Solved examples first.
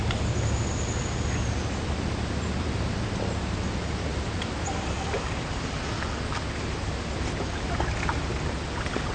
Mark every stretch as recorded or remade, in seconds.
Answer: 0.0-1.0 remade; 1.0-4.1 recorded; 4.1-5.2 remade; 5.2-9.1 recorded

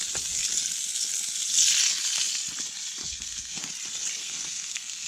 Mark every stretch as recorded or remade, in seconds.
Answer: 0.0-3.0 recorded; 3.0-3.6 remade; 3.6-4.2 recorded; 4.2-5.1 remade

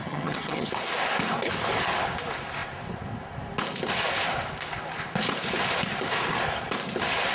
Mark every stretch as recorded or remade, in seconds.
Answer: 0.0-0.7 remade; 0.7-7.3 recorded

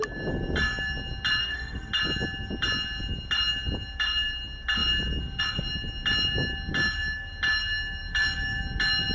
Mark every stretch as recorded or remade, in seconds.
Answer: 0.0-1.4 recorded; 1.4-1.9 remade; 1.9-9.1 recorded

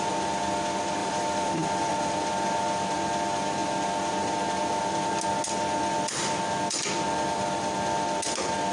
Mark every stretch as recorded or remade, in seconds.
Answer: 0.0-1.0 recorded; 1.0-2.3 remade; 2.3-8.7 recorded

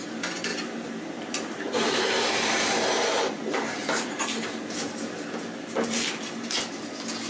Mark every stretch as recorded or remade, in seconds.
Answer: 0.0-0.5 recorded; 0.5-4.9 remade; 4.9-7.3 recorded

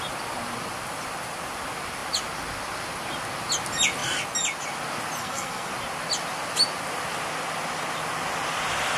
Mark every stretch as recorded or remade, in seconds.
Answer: 0.0-5.2 recorded; 5.2-5.7 remade; 5.7-9.0 recorded

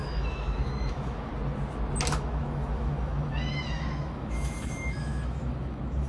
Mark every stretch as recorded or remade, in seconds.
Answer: 0.0-1.3 remade; 1.3-2.1 recorded; 2.1-6.1 remade